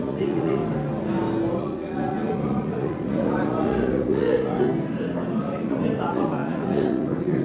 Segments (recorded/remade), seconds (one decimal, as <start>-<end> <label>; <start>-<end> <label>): 0.0-0.6 remade; 0.6-1.6 recorded; 1.6-4.7 remade; 4.7-5.4 recorded; 5.4-7.4 remade